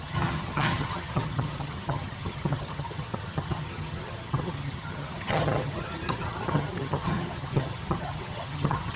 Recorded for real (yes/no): no